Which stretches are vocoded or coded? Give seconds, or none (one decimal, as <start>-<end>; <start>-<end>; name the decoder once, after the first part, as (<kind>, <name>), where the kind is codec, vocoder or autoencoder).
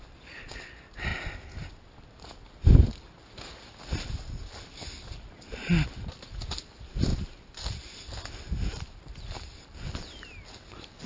none